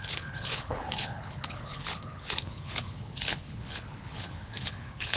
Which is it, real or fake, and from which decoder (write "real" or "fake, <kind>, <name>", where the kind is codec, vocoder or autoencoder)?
fake, codec, HILCodec